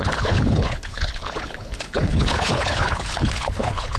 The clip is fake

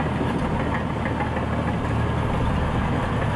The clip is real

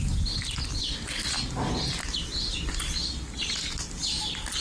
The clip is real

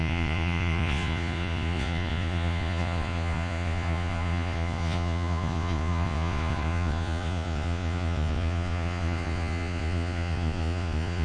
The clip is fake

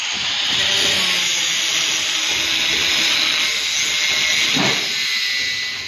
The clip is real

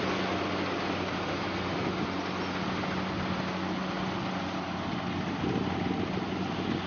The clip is real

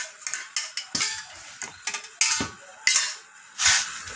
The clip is real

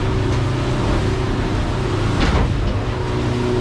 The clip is real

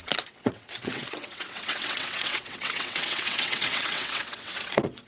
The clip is fake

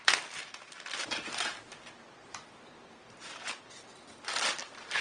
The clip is fake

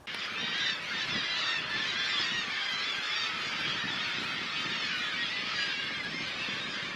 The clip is real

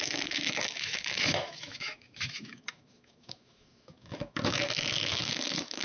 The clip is fake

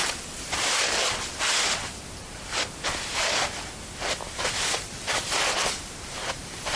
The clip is real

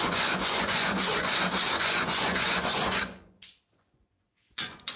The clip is fake